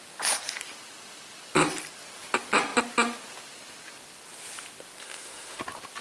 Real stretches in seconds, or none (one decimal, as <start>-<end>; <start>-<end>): 0.0-5.0; 5.6-6.0